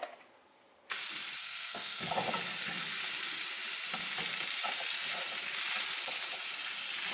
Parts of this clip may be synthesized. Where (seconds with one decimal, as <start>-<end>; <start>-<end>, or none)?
1.4-2.0